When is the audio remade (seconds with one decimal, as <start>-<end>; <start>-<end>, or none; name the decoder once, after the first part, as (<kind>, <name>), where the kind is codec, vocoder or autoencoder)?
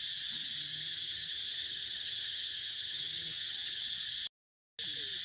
0.7-3.8 (vocoder, HiFi-GAN)